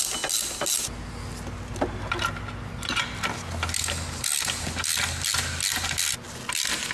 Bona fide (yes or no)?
yes